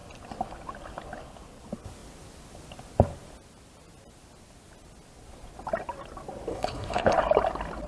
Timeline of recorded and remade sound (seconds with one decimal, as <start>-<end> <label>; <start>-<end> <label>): 0.0-6.5 recorded; 6.5-7.1 remade; 7.1-7.9 recorded